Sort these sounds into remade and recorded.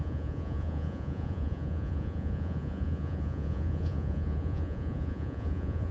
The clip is remade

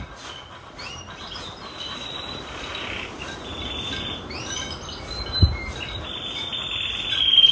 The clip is recorded